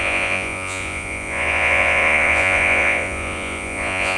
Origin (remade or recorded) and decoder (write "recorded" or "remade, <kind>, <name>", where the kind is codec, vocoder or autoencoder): remade, vocoder, Vocos